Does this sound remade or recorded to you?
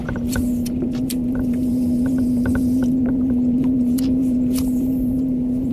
remade